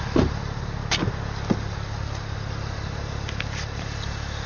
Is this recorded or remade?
recorded